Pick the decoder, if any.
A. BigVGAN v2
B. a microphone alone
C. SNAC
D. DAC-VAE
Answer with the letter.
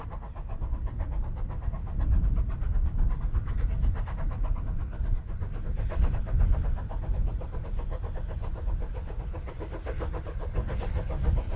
B